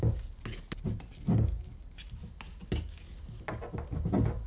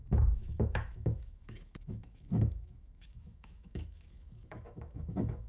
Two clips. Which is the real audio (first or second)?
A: first